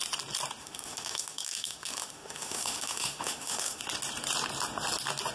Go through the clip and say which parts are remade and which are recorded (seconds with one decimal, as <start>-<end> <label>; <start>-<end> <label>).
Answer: 0.0-0.6 recorded; 0.6-3.8 remade; 3.8-5.3 recorded